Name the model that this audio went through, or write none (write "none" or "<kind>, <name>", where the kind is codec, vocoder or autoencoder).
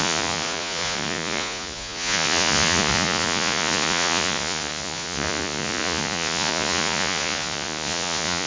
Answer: vocoder, Vocos